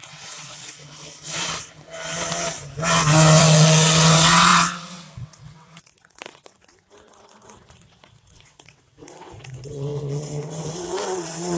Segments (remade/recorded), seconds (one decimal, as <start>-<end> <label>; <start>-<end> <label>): 0.0-0.8 remade; 0.8-3.4 recorded; 3.4-11.6 remade